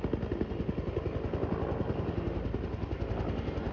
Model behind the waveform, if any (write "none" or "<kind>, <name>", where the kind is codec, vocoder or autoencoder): none